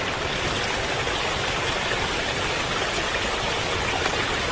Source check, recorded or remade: recorded